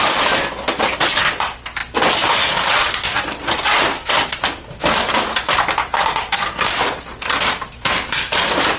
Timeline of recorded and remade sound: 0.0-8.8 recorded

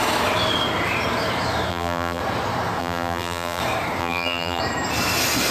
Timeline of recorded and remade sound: 0.0-1.7 recorded; 1.7-2.2 remade; 2.2-2.8 recorded; 2.8-3.6 remade; 3.6-4.0 recorded; 4.0-4.6 remade; 4.6-5.5 recorded

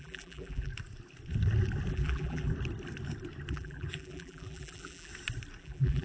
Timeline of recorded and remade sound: 0.0-0.7 remade; 0.7-1.9 recorded; 1.9-2.5 remade; 2.5-3.5 recorded; 3.5-5.1 remade; 5.1-5.6 recorded; 5.6-6.0 remade

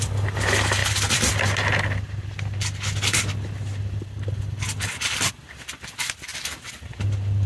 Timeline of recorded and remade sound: 0.0-7.5 recorded

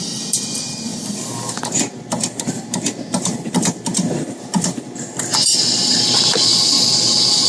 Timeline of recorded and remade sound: 0.0-7.5 remade

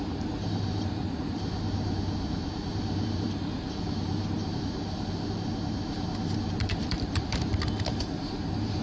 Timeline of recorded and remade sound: 0.0-7.5 remade; 7.5-8.0 recorded; 8.0-8.8 remade

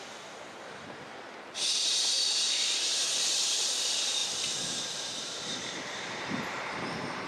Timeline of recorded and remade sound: 0.0-4.2 remade; 4.2-4.9 recorded; 4.9-7.3 remade